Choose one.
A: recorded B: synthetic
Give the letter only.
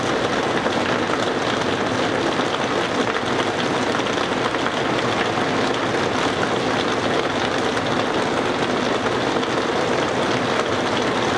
A